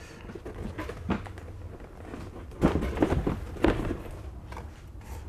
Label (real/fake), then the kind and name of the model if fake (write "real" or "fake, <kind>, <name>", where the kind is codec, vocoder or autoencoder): real